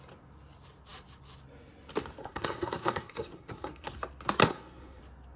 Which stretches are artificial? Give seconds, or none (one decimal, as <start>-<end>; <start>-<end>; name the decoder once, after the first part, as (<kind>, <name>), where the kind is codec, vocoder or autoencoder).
2.2-3.9 (codec, SNAC); 4.4-5.0